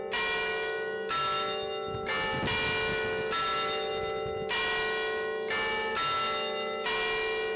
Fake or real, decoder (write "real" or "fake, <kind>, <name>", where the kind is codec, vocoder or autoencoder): real